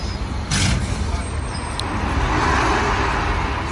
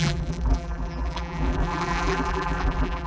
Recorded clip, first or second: first